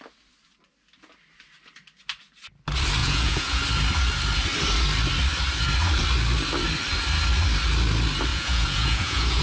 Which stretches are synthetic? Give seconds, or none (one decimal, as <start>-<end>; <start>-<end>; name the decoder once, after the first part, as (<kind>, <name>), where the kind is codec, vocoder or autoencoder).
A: 3.0-3.6 (vocoder, Vocos); 8.3-9.4